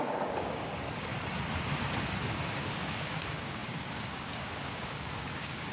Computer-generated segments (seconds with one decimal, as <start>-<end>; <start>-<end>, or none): 0.0-1.1; 2.3-5.7